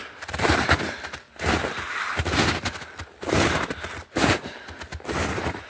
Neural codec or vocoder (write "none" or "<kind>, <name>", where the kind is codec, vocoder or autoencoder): none